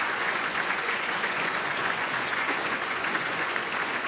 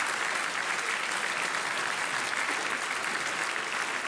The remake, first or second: first